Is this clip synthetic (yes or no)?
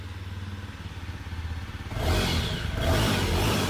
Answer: no